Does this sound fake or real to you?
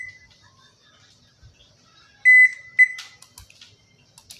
real